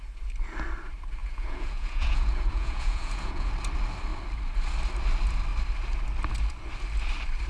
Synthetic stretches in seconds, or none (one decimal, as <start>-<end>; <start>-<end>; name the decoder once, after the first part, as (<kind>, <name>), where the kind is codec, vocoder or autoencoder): 1.2-3.5 (vocoder, Vocos)